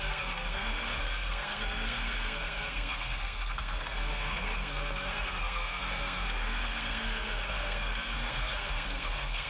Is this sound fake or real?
fake